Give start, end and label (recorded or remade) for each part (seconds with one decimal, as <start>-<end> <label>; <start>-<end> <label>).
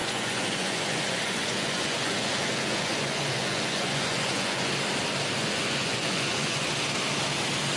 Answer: 0.0-4.7 remade; 4.7-5.4 recorded; 5.4-6.7 remade; 6.7-7.8 recorded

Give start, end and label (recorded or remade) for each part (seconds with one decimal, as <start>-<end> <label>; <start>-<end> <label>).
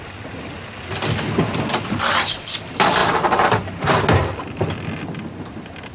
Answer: 0.0-3.0 recorded; 3.0-3.9 remade; 3.9-5.9 recorded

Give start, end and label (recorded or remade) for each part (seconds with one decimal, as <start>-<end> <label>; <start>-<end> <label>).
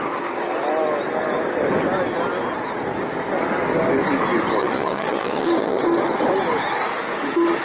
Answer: 0.0-4.6 recorded; 4.6-5.8 remade; 5.8-7.6 recorded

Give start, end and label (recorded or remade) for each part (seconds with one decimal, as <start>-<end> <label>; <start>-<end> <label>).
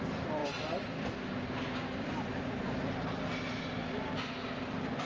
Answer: 0.0-5.1 recorded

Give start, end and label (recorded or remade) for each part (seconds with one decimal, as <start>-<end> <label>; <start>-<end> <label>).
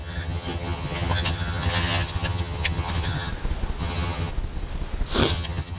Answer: 0.0-3.3 remade; 3.3-3.8 recorded; 3.8-4.3 remade; 4.3-5.2 recorded; 5.2-5.8 remade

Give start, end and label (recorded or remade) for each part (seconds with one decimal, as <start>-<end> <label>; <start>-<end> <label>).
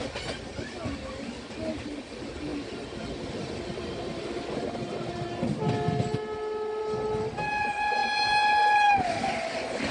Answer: 0.0-9.9 recorded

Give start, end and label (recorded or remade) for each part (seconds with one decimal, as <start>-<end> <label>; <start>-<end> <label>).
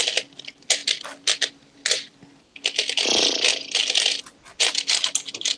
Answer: 0.0-5.6 recorded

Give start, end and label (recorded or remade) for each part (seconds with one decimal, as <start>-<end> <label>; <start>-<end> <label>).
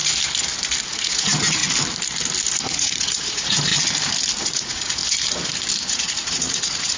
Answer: 0.0-0.9 recorded; 0.9-1.6 remade; 1.6-2.6 recorded; 2.6-3.7 remade; 3.7-4.4 recorded; 4.4-5.0 remade; 5.0-5.9 recorded; 5.9-7.0 remade